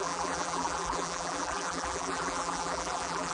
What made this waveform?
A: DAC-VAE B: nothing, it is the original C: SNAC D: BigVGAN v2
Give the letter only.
D